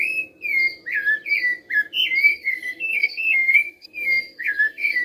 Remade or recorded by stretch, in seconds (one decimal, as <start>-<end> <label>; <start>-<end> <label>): 0.0-2.3 recorded; 2.3-5.0 remade